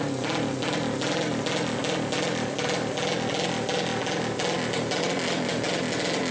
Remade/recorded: recorded